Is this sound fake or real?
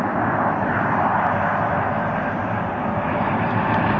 real